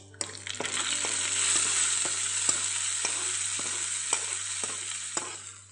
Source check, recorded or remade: recorded